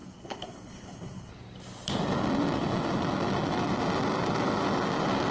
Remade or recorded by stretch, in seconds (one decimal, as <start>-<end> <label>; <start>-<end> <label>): 0.0-1.3 remade; 1.3-5.3 recorded